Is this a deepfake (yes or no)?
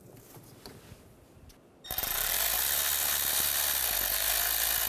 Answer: no